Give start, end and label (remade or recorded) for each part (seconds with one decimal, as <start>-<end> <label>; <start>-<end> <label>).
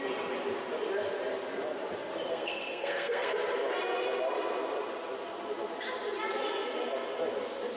0.0-2.3 recorded; 2.3-3.3 remade; 3.3-7.8 recorded